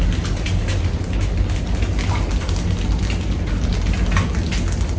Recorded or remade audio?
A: recorded